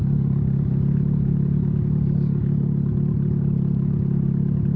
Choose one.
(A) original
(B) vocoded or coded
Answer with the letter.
A